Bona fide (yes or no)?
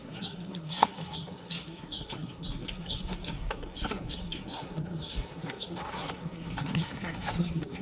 no